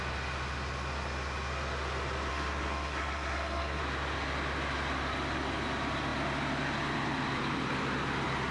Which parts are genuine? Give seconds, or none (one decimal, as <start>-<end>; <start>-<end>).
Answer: 0.0-2.3; 3.8-8.5